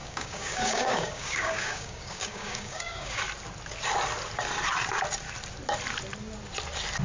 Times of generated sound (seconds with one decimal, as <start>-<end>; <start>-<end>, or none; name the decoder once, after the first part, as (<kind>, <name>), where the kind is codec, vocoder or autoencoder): 0.0-3.2 (codec, DAC)